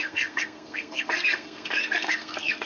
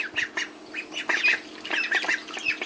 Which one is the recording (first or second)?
second